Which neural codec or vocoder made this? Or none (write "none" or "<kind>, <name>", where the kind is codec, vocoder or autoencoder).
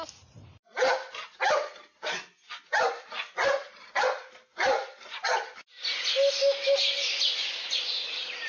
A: none